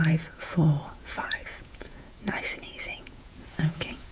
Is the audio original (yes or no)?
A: no